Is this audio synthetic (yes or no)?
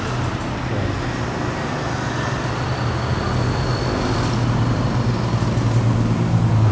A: no